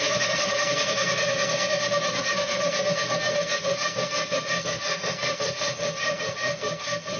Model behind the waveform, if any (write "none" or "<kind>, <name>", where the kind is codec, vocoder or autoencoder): codec, SNAC